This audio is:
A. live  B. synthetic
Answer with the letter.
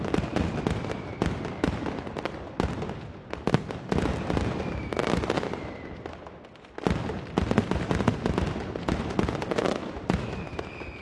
A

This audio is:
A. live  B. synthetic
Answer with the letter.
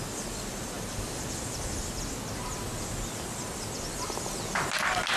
A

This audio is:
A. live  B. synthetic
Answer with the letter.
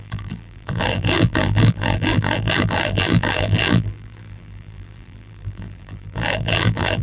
B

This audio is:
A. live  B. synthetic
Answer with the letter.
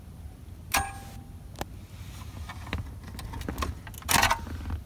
A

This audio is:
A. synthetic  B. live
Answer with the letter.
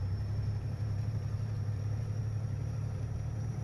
A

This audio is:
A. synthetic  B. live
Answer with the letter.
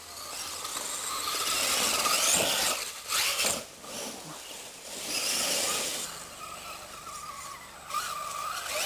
B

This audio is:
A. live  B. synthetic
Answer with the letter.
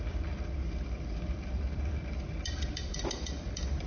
B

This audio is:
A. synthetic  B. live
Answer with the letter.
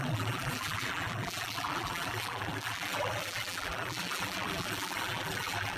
A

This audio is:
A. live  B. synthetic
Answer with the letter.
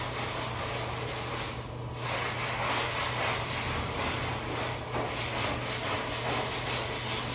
A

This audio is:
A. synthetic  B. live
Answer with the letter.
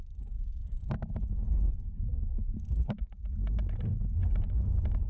B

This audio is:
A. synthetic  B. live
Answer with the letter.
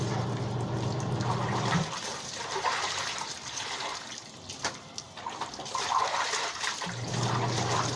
B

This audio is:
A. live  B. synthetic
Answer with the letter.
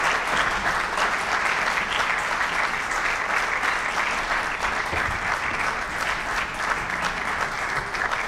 A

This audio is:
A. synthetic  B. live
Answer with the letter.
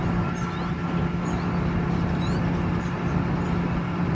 A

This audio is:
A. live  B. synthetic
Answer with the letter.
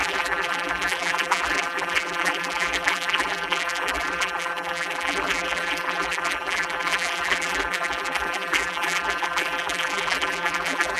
B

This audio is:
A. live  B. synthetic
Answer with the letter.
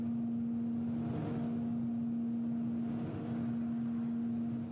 A